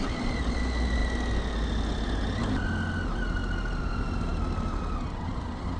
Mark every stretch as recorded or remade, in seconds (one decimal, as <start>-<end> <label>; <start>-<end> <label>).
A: 0.0-5.8 recorded